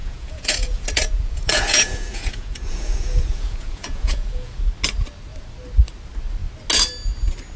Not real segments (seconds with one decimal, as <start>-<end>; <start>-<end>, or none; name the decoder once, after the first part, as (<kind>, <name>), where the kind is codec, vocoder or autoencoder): 0.0-4.6 (vocoder, Vocos)